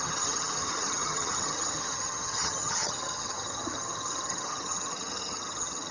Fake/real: fake